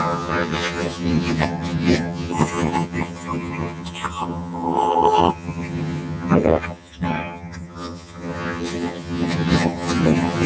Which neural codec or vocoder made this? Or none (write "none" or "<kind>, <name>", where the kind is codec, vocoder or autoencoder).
vocoder, HiFi-GAN